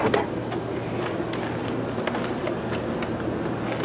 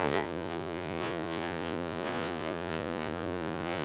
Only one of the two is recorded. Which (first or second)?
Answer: first